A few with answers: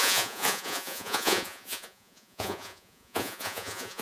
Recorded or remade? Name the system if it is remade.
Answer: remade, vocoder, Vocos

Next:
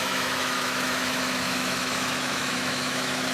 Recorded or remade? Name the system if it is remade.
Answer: remade, autoencoder, DAC-VAE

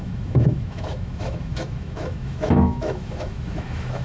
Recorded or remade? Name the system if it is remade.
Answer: remade, autoencoder, DAC-VAE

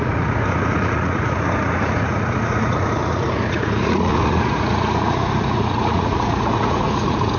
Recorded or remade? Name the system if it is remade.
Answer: remade, vocoder, Vocos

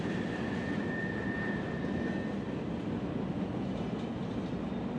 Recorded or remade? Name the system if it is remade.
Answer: recorded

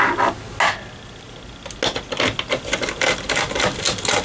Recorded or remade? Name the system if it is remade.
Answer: recorded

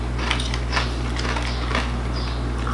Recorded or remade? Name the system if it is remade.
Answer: recorded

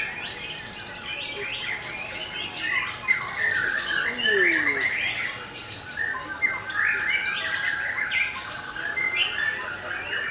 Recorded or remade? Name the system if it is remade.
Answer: recorded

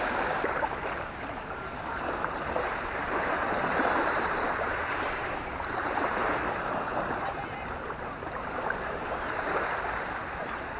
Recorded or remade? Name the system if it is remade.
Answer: remade, vocoder, BigVGAN v2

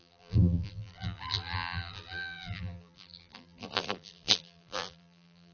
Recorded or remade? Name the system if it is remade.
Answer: remade, vocoder, BigVGAN v2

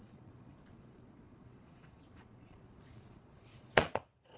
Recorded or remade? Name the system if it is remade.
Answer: remade, vocoder, Vocos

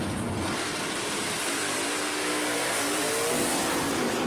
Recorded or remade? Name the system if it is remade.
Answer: recorded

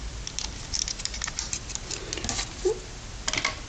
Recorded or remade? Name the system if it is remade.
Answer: recorded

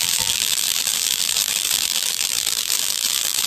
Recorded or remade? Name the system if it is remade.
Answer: remade, vocoder, BigVGAN v2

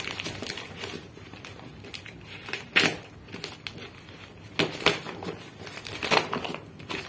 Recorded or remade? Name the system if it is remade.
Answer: recorded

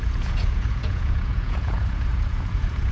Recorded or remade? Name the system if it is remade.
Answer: remade, vocoder, Vocos